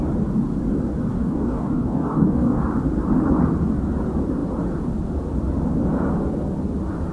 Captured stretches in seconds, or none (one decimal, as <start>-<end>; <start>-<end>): 0.0-1.1; 2.6-7.1